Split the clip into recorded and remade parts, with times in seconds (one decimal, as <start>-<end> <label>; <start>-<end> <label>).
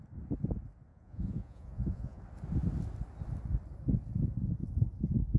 0.0-0.9 recorded; 0.9-2.2 remade; 2.2-5.4 recorded